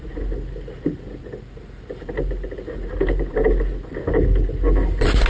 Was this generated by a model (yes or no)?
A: no